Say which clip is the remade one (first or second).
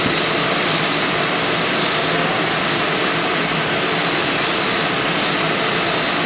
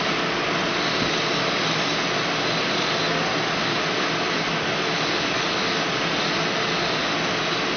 first